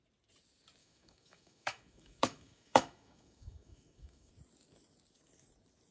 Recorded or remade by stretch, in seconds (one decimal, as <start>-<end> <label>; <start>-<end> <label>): 0.0-0.8 recorded; 0.8-4.3 remade; 4.3-5.9 recorded